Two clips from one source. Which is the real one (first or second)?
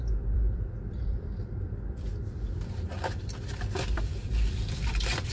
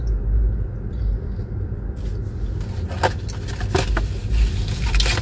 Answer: second